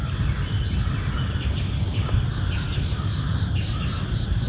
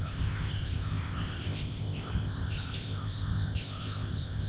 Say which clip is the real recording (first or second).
first